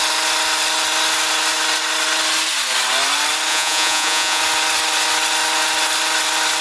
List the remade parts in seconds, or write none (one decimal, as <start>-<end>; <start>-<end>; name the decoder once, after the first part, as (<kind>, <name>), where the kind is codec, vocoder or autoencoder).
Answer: 3.5-4.4 (vocoder, Vocos)